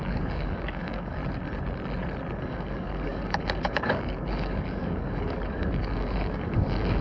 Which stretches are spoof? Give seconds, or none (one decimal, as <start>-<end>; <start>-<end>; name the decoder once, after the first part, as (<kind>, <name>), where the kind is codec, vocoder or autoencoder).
0.0-1.2 (codec, DAC); 2.4-7.0